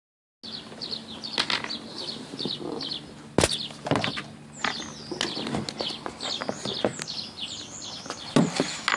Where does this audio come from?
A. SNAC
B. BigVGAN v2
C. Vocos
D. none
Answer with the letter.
D